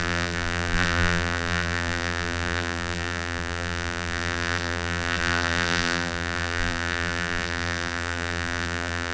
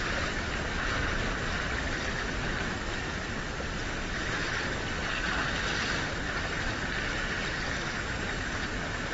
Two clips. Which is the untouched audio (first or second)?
second